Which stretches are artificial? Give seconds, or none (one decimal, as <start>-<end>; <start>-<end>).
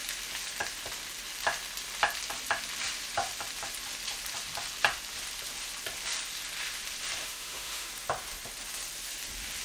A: 7.2-7.9